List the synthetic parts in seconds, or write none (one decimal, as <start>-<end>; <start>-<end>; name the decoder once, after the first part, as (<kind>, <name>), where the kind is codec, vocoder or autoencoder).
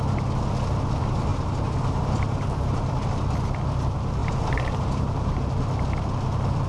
1.3-2.8 (vocoder, BigVGAN v2); 4.2-5.4